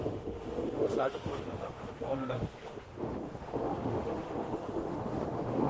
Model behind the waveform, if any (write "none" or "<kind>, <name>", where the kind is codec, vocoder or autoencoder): autoencoder, DAC-VAE